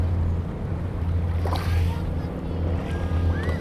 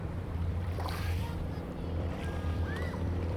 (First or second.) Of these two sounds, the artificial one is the second